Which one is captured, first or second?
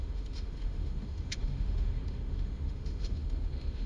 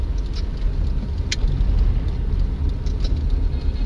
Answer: second